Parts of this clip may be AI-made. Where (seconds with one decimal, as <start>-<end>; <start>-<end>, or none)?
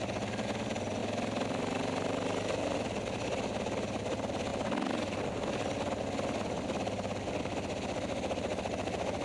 none